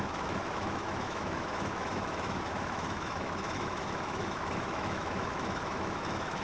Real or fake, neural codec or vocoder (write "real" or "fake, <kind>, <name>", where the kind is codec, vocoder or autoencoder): fake, autoencoder, DAC-VAE